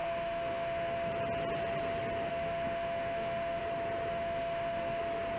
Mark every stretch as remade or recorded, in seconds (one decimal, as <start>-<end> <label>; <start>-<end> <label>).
0.0-1.1 remade; 1.1-2.3 recorded; 2.3-3.6 remade; 3.6-4.1 recorded; 4.1-5.0 remade; 5.0-5.4 recorded